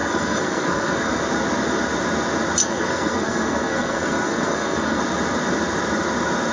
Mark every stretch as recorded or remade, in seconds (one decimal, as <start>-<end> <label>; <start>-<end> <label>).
0.0-1.2 remade; 1.2-2.6 recorded; 2.6-5.0 remade; 5.0-6.5 recorded